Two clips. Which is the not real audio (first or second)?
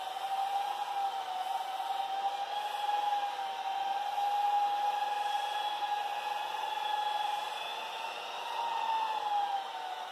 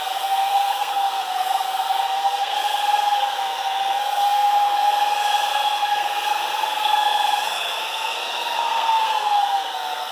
second